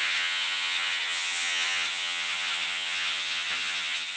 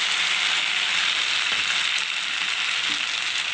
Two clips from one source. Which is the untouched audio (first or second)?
second